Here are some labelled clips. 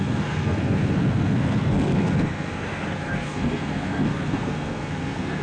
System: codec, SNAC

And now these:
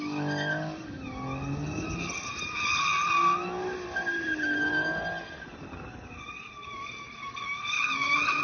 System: none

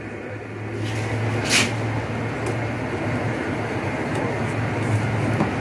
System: none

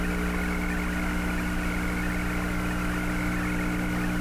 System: none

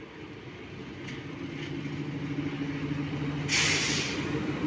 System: none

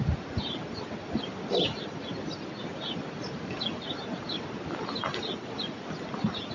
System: none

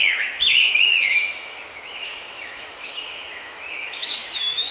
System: autoencoder, DAC-VAE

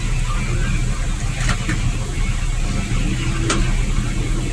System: none